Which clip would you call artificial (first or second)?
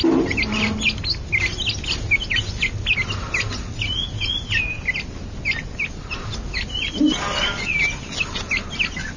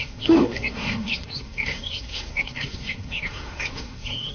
second